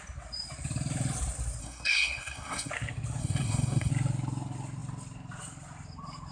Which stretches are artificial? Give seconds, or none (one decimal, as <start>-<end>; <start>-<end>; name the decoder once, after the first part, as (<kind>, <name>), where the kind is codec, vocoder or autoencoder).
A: 1.6-2.7 (codec, SNAC); 3.2-3.9